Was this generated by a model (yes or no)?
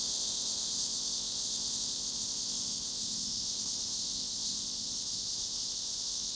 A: yes